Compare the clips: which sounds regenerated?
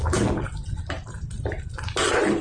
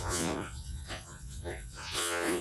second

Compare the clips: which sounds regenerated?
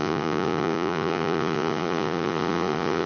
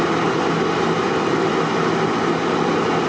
first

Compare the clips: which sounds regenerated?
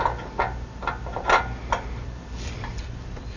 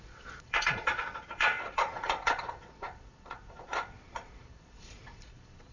second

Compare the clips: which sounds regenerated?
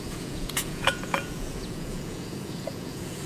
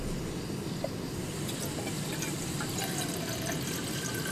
first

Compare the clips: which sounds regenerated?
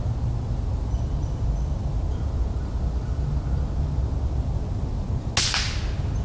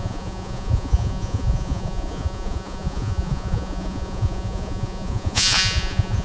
second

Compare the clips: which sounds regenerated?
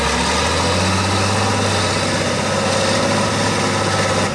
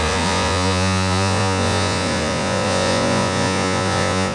second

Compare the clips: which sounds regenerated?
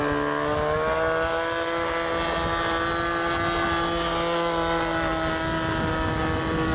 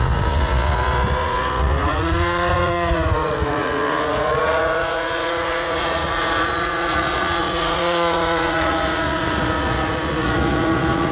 second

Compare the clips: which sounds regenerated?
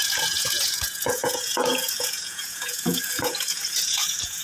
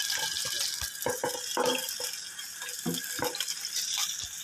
first